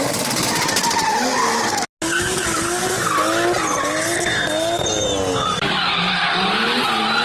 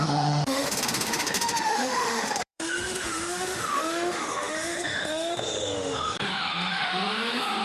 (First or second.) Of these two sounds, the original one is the first